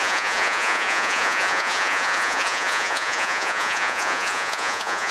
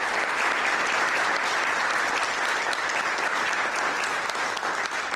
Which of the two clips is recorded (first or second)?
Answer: second